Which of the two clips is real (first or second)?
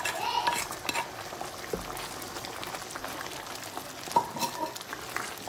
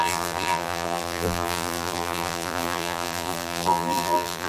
first